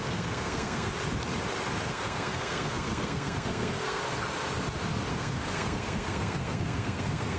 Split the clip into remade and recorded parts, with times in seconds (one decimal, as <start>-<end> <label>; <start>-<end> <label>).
0.0-0.9 remade; 0.9-1.9 recorded; 1.9-4.0 remade; 4.0-5.1 recorded; 5.1-7.4 remade

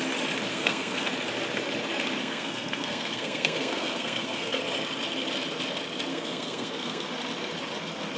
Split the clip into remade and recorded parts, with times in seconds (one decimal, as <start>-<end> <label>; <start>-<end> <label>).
0.0-0.5 recorded; 0.5-1.1 remade; 1.1-2.2 recorded; 2.2-4.6 remade; 4.6-6.1 recorded; 6.1-7.1 remade; 7.1-8.2 recorded

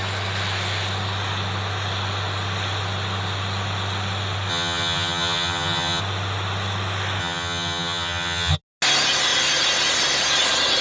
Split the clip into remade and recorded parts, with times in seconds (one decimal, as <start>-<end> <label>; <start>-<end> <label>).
0.0-4.5 recorded; 4.5-6.0 remade; 6.0-7.2 recorded; 7.2-8.6 remade; 8.6-10.8 recorded

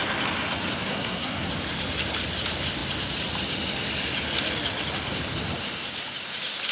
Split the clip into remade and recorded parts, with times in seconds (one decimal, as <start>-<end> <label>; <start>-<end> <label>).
0.0-0.9 recorded; 0.9-1.5 remade; 1.5-6.7 recorded